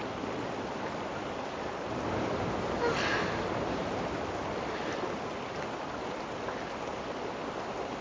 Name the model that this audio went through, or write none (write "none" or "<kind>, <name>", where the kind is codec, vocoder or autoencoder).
none